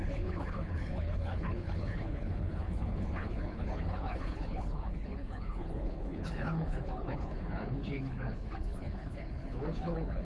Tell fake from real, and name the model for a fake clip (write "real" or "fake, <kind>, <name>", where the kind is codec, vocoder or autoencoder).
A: fake, codec, HILCodec